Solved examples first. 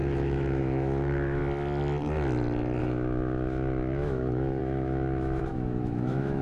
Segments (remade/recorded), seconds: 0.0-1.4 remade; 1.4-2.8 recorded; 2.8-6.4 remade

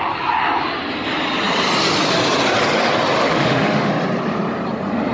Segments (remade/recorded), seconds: 0.0-3.2 recorded; 3.2-3.9 remade; 3.9-5.1 recorded

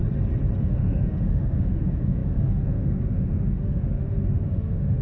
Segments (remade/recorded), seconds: 0.0-0.6 recorded; 0.6-5.0 remade